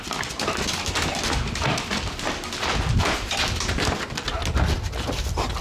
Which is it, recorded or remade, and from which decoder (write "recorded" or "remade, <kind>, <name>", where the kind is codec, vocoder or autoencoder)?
recorded